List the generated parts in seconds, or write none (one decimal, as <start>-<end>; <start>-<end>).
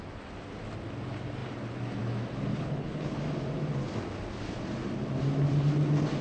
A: 2.5-3.2